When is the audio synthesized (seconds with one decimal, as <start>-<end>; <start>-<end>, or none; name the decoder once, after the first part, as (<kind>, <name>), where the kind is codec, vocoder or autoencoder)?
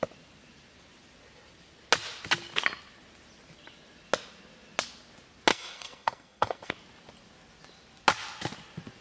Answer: 5.5-6.7 (codec, SNAC)